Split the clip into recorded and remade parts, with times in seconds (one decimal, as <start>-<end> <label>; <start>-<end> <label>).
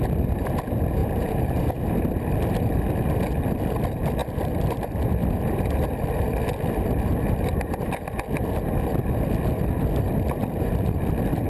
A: 0.0-1.0 recorded; 1.0-1.8 remade; 1.8-10.4 recorded; 10.4-11.0 remade; 11.0-11.5 recorded